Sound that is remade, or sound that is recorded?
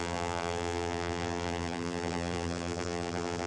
remade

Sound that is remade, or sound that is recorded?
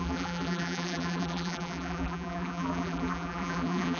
remade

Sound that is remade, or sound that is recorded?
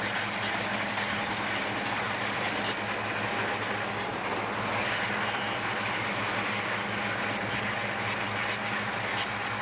recorded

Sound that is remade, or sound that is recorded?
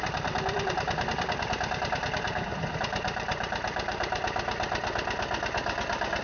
remade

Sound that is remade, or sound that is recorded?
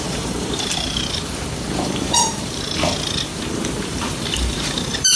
remade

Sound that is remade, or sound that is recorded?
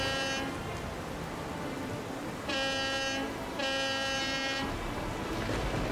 recorded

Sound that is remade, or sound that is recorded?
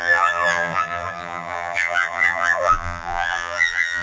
remade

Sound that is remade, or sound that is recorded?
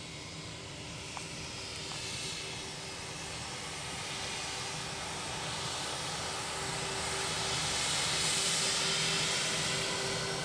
recorded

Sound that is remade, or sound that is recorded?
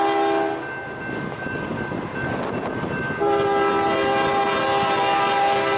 recorded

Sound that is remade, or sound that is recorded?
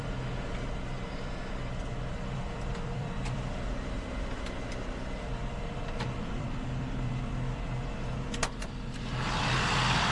remade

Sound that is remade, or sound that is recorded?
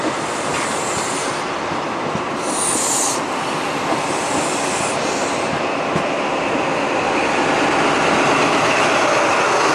recorded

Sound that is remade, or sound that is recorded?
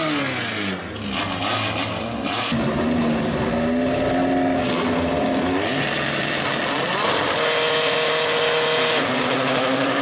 recorded